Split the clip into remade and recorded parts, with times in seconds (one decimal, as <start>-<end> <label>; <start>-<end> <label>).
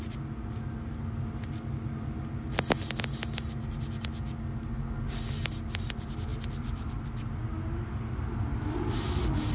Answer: 0.0-9.5 recorded